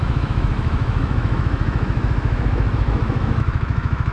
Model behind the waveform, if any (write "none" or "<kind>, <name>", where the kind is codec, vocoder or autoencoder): autoencoder, DAC-VAE